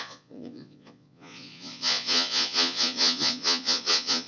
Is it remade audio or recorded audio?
remade